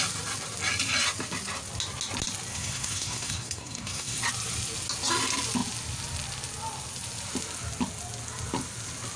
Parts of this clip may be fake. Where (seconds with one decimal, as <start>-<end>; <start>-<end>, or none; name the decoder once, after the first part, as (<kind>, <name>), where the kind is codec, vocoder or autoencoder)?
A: 2.5-4.2 (codec, SNAC)